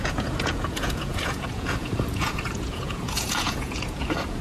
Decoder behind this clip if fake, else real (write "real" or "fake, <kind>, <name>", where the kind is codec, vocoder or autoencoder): fake, vocoder, Vocos